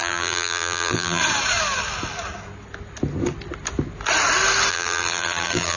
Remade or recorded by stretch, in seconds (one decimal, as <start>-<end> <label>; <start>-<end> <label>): 0.0-1.2 remade; 1.2-4.7 recorded; 4.7-5.8 remade

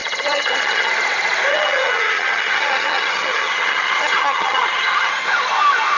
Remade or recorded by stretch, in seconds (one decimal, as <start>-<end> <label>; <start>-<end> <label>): 0.0-0.9 remade; 0.9-1.5 recorded; 1.5-5.1 remade; 5.1-6.0 recorded